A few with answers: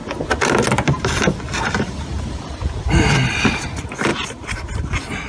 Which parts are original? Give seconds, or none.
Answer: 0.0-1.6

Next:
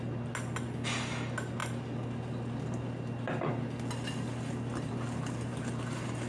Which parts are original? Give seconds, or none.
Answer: 0.0-6.3